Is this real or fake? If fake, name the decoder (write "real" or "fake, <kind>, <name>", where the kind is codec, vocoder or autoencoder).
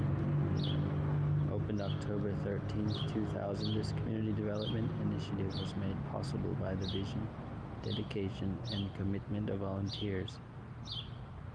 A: real